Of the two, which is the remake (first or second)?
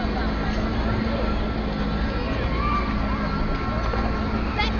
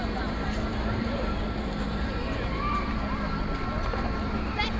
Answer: second